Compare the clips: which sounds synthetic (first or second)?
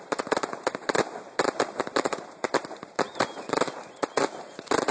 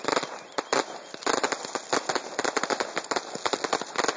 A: first